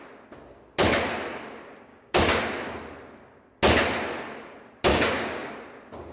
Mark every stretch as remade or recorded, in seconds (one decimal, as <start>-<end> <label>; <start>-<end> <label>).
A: 0.0-1.9 recorded; 1.9-2.4 remade; 2.4-4.9 recorded; 4.9-5.5 remade; 5.5-6.1 recorded